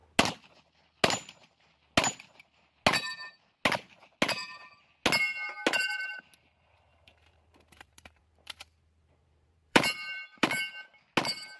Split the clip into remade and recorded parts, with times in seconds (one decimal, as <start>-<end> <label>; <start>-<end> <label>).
0.0-6.9 recorded; 6.9-10.6 remade; 10.6-11.6 recorded